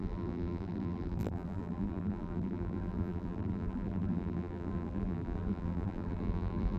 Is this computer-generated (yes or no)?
yes